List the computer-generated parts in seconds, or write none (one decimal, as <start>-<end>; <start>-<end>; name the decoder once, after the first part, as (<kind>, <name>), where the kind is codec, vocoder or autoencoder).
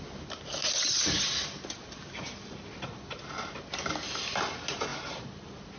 none